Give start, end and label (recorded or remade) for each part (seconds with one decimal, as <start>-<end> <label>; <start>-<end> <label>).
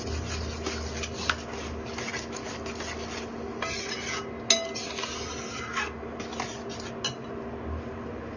0.0-8.4 recorded